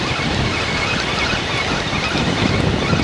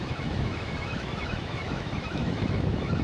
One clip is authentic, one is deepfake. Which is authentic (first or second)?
first